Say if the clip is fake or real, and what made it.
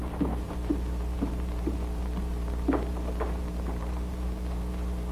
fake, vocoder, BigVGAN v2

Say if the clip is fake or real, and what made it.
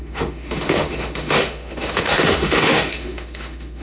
fake, autoencoder, DAC-VAE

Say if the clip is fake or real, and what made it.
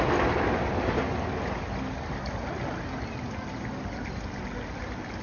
real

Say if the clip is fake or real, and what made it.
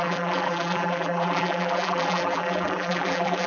fake, vocoder, BigVGAN v2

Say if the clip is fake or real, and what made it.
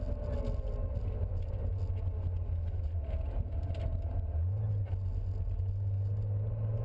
real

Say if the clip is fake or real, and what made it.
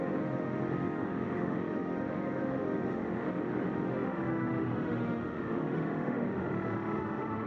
fake, autoencoder, DAC-VAE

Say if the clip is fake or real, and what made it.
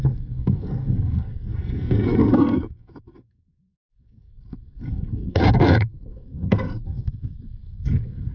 fake, codec, SNAC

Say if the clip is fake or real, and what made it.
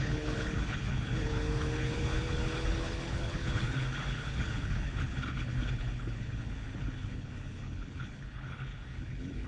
fake, codec, HILCodec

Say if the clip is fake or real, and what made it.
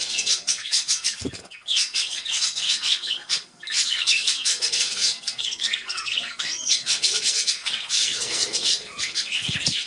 fake, codec, SNAC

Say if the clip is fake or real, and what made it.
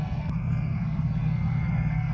fake, codec, SNAC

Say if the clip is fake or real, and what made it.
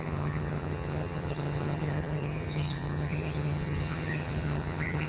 fake, vocoder, HiFi-GAN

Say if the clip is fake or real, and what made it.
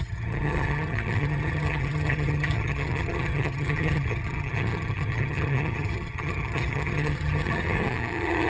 fake, vocoder, HiFi-GAN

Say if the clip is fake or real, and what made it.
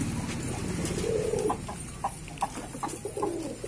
real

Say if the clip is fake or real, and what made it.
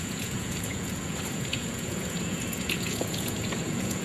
fake, vocoder, Vocos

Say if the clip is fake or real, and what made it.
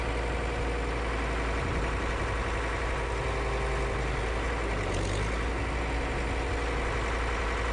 real